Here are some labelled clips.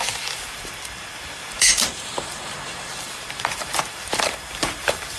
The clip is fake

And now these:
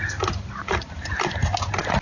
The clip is real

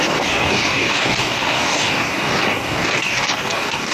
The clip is fake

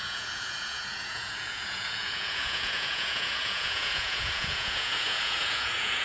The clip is fake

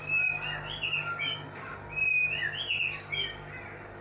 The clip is real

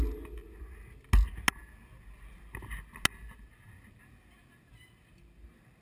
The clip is real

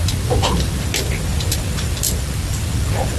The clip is real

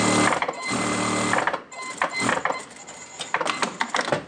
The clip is real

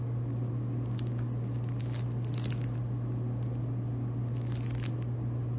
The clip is real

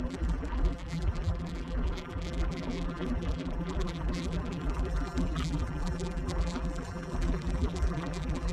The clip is fake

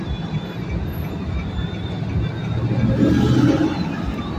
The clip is real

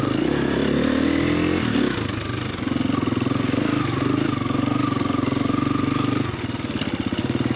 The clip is real